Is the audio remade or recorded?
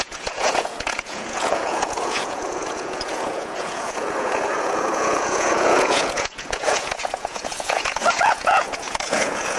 remade